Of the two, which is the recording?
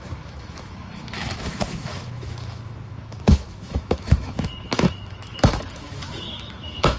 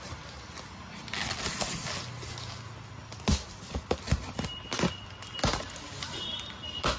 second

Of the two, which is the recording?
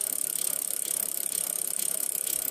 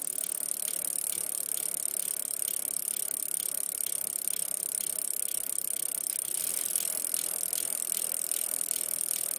second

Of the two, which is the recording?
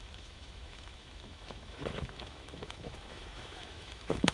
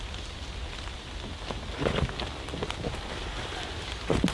second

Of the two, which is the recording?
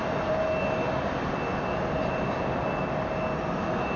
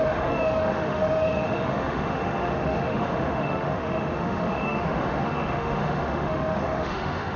first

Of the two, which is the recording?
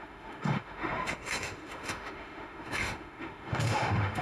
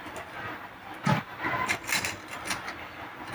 second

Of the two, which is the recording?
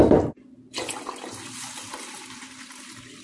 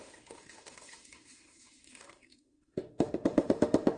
first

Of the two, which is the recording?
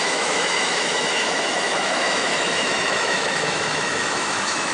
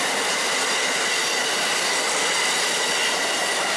second